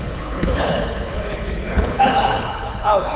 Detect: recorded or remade remade